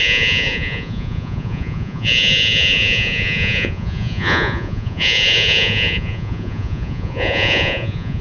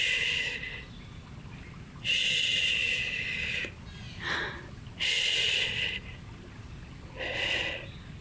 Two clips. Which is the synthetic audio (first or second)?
first